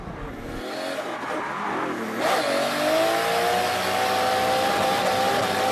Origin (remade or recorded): recorded